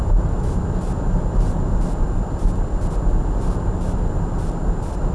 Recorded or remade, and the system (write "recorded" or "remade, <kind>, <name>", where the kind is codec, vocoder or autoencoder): recorded